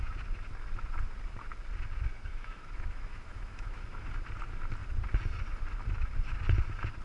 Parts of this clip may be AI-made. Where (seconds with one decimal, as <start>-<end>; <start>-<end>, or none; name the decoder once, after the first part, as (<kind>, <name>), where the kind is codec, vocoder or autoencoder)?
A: 2.3-3.8 (autoencoder, DAC-VAE)